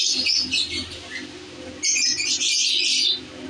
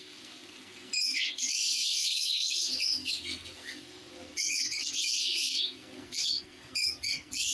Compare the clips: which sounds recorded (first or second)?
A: first